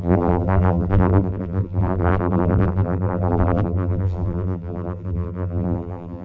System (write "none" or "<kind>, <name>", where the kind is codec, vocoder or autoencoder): vocoder, BigVGAN v2